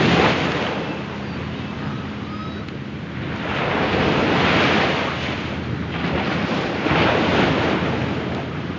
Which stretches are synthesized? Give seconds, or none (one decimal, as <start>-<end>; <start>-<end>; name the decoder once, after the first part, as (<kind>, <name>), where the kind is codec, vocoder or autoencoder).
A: none